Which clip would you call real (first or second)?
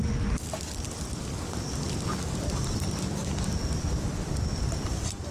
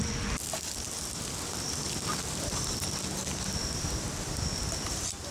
second